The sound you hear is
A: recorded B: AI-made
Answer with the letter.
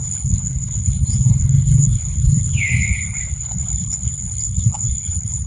B